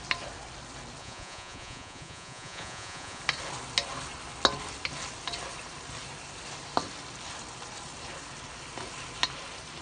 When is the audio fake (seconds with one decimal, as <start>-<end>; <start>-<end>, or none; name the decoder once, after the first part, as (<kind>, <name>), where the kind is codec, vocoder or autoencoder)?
1.0-3.2 (vocoder, Vocos)